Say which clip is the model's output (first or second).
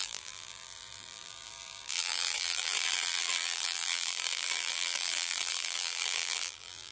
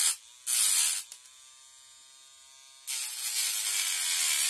first